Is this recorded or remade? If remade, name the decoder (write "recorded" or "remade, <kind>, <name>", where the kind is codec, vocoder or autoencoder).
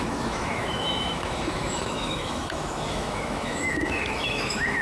remade, autoencoder, DAC-VAE